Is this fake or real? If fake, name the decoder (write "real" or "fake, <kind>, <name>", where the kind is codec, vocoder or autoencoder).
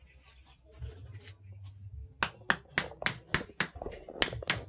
real